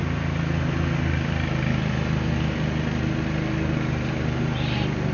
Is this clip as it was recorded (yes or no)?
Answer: yes